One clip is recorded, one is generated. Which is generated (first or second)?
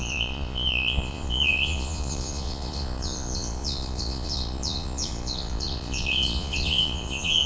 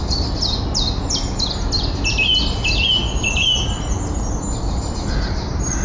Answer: first